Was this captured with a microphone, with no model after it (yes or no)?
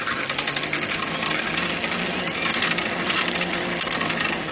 yes